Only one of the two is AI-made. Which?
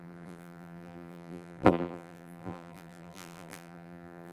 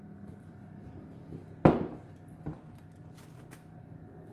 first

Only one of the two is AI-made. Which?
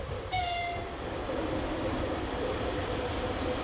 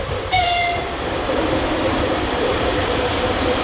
second